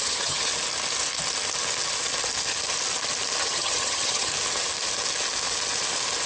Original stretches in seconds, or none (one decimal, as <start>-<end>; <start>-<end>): 0.5-3.4; 4.3-6.3